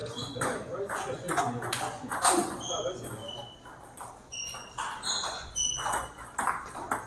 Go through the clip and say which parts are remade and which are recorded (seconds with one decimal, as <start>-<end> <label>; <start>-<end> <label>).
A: 0.0-3.2 remade; 3.2-4.1 recorded; 4.1-6.2 remade; 6.2-7.1 recorded